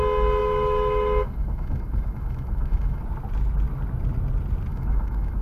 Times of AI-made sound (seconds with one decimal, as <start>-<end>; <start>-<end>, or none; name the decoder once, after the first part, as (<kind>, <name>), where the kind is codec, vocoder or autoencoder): 0.4-3.0 (autoencoder, DAC-VAE); 4.7-5.4